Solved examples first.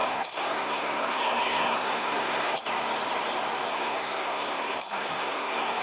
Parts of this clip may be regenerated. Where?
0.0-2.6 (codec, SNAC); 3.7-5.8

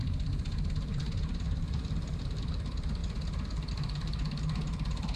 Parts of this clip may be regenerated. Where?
0.0-3.0 (vocoder, BigVGAN v2); 3.7-5.2

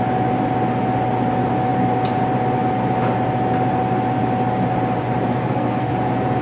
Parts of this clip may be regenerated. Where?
5.4-5.9 (codec, SNAC)

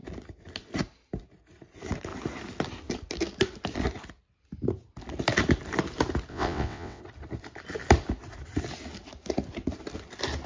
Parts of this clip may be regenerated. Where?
6.3-7.0 (vocoder, WaveNeXt)